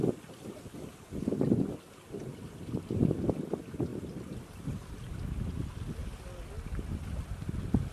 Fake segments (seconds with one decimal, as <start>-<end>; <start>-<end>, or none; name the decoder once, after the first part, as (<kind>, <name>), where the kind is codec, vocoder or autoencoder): 2.3-3.2 (vocoder, BigVGAN v2); 3.9-4.4